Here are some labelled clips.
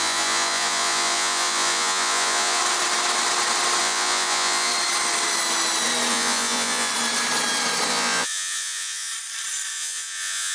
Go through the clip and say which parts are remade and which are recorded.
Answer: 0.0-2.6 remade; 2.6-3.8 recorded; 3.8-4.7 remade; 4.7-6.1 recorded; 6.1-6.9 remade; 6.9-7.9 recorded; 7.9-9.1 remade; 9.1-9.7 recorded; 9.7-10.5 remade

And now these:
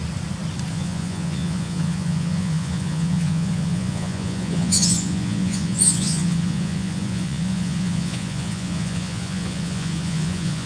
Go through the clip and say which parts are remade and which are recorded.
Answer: 0.0-0.7 recorded; 0.7-10.7 remade

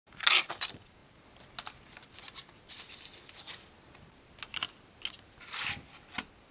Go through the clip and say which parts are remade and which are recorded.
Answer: 0.0-6.5 recorded

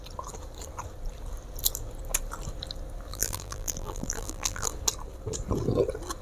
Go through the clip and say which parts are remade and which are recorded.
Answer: 0.0-3.1 recorded; 3.1-4.7 remade; 4.7-6.2 recorded

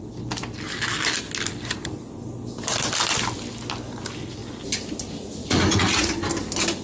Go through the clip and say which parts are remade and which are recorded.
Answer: 0.0-5.4 recorded; 5.4-6.1 remade; 6.1-6.8 recorded

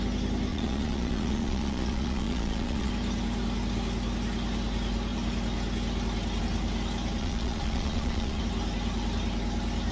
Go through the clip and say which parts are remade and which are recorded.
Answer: 0.0-0.5 recorded; 0.5-2.9 remade; 2.9-7.2 recorded; 7.2-8.4 remade; 8.4-9.9 recorded

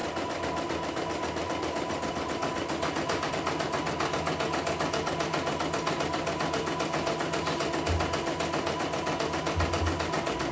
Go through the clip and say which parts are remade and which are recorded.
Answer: 0.0-3.3 remade; 3.3-10.5 recorded